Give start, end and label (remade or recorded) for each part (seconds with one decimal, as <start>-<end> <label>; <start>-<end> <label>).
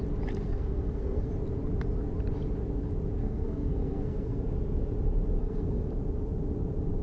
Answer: 0.0-0.4 recorded; 0.4-1.3 remade; 1.3-3.2 recorded; 3.2-4.4 remade; 4.4-5.4 recorded; 5.4-5.9 remade; 5.9-7.0 recorded